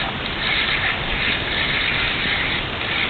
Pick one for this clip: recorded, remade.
recorded